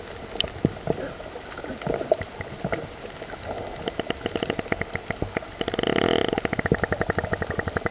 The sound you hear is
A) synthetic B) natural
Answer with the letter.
B